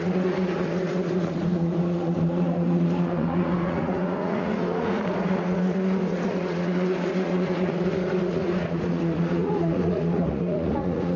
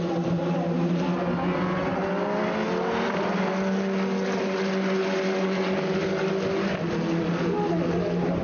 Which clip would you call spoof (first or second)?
first